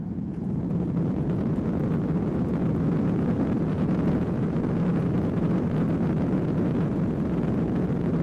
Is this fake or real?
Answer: fake